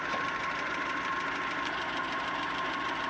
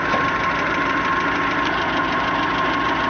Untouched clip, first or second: second